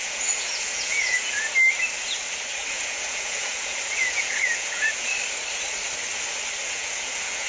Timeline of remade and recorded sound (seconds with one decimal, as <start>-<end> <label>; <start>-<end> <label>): 0.0-1.5 remade; 1.5-2.7 recorded; 2.7-5.1 remade; 5.1-6.6 recorded; 6.6-7.5 remade